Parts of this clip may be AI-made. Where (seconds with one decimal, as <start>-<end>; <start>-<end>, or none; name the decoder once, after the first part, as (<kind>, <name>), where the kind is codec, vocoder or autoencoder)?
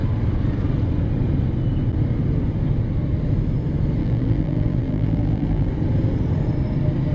4.0-5.7 (vocoder, BigVGAN v2)